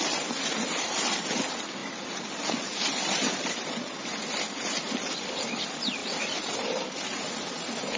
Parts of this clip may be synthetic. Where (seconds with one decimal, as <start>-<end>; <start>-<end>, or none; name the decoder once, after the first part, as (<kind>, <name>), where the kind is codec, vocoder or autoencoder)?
none